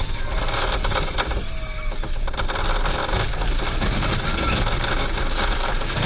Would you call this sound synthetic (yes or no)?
no